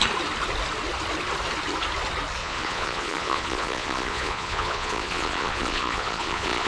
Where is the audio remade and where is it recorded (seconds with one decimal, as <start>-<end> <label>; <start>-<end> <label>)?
0.0-2.4 recorded; 2.4-6.7 remade